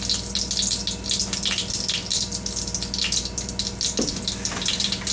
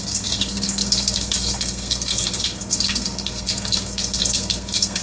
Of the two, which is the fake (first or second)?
second